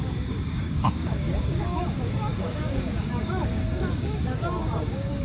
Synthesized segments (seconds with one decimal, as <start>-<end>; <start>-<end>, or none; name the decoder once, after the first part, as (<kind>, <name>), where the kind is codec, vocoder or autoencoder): 0.0-5.2 (codec, DAC)